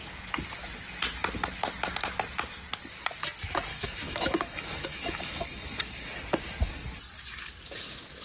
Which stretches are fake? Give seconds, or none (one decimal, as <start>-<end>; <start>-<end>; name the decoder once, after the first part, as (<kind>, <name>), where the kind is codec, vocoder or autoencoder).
3.7-6.1 (autoencoder, DAC-VAE)

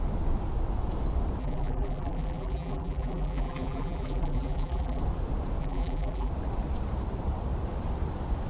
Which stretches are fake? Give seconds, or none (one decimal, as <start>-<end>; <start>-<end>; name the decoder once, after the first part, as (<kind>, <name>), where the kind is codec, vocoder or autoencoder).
1.4-5.0 (vocoder, BigVGAN v2); 5.6-6.3

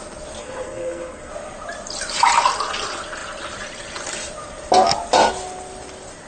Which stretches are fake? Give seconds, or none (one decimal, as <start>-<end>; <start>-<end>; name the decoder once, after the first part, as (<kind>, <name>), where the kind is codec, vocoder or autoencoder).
0.4-1.3 (codec, SNAC)

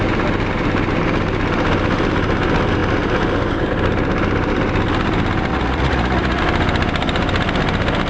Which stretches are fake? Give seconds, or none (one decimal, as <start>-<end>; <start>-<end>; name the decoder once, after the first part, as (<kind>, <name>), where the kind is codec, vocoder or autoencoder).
5.5-6.4 (vocoder, Vocos)

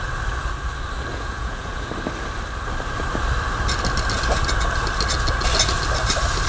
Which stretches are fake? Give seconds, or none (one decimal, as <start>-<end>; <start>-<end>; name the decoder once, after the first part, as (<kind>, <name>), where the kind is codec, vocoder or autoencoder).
1.1-1.9 (vocoder, Vocos)

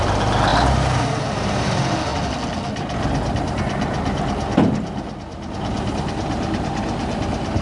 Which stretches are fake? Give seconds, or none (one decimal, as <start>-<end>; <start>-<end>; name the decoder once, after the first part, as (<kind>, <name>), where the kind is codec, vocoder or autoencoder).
none

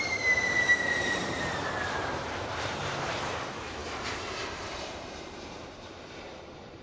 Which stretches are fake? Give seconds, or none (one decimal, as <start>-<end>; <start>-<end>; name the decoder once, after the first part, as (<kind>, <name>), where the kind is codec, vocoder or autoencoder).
0.0-6.8 (vocoder, BigVGAN v2)